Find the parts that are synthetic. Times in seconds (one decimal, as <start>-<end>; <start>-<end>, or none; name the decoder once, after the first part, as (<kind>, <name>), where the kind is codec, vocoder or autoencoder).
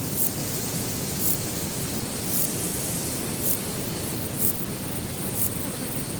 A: 0.4-1.2 (vocoder, Vocos)